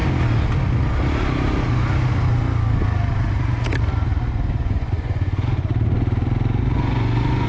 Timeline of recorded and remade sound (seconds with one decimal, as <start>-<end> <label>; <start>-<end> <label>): 0.0-4.3 recorded; 4.3-5.7 remade; 5.7-6.6 recorded; 6.6-7.5 remade